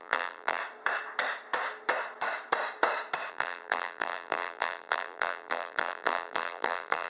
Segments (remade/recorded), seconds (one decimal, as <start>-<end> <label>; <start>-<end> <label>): 0.0-0.6 remade; 0.6-3.3 recorded; 3.3-7.1 remade